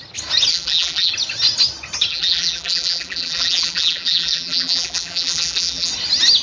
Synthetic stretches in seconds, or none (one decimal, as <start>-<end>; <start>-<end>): 0.5-1.1; 2.1-5.9